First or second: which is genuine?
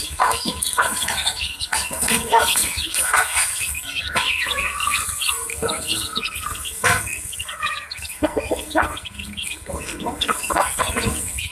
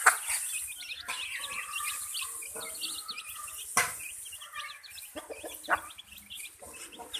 second